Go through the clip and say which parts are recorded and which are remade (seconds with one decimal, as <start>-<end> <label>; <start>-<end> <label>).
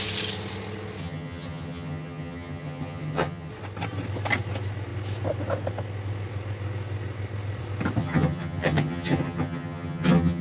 0.0-1.0 recorded; 1.0-3.5 remade; 3.5-8.0 recorded; 8.0-10.4 remade